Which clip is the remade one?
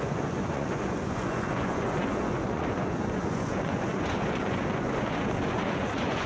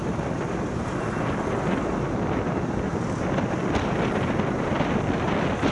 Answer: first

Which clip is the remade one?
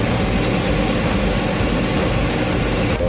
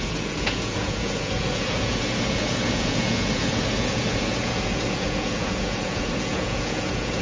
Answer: second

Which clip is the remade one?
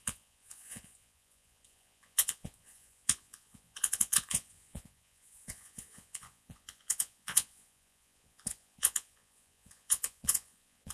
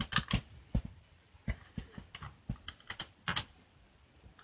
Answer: first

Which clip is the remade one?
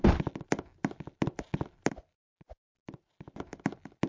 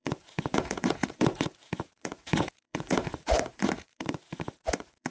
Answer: second